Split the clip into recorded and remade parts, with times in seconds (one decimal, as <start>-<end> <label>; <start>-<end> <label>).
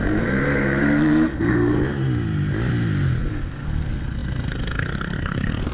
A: 0.0-1.8 remade; 1.8-3.2 recorded; 3.2-5.7 remade